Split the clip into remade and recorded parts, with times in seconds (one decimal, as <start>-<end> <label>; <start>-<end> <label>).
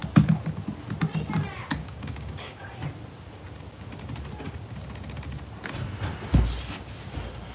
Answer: 0.0-1.8 recorded; 1.8-2.7 remade; 2.7-7.5 recorded